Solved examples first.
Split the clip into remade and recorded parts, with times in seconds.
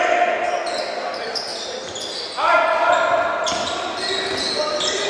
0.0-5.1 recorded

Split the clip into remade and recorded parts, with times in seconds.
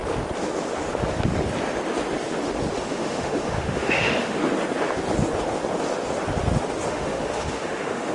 0.0-2.8 recorded; 2.8-4.4 remade; 4.4-6.9 recorded; 6.9-8.1 remade